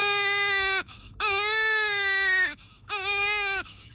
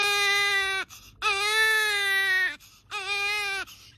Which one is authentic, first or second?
second